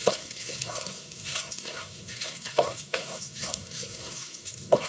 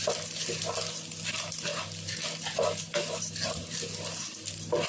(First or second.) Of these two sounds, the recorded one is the second